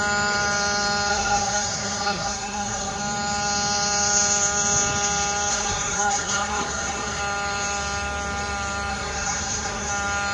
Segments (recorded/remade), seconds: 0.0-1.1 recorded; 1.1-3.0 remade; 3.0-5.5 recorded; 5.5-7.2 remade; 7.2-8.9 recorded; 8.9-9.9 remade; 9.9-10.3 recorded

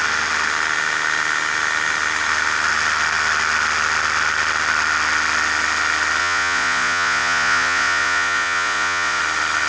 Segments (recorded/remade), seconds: 0.0-6.2 recorded; 6.2-9.2 remade; 9.2-9.7 recorded